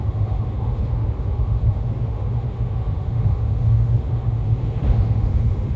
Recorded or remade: remade